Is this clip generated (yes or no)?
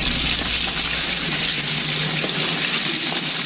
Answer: no